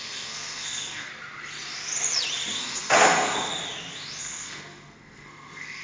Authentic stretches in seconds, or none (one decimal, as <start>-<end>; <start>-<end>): 1.1-2.5; 3.5-4.2